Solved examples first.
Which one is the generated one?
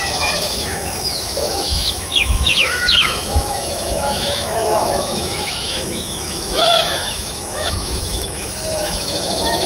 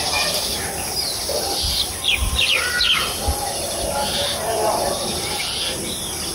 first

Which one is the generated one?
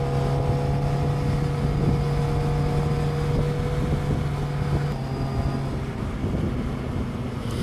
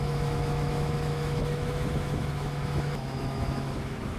second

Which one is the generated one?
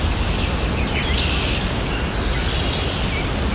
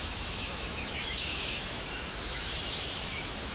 second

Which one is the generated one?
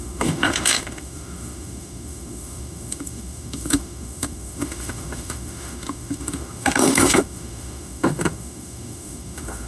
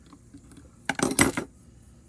first